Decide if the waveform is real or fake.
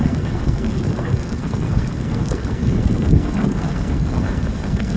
fake